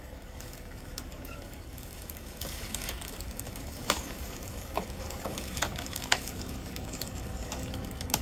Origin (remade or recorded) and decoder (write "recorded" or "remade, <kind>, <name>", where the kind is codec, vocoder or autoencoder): remade, codec, DAC